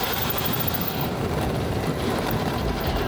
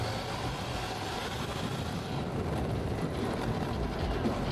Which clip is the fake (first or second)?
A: first